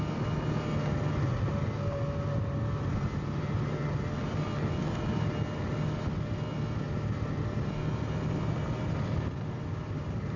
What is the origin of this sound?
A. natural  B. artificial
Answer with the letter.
A